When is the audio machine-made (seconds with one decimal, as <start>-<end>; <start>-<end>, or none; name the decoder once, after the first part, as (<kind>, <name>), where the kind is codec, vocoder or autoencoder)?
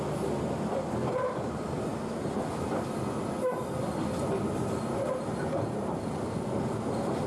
none